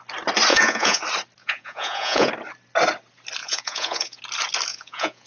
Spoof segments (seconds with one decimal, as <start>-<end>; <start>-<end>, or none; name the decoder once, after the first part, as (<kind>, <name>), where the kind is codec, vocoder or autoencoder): 0.5-1.0 (vocoder, Vocos); 1.4-2.3; 3.4-4.2; 4.7-5.3